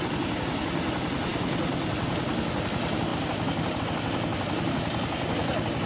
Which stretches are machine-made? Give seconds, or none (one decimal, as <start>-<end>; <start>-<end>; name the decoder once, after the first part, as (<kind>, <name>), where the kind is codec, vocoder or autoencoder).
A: none